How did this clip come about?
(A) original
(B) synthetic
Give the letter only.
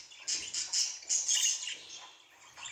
A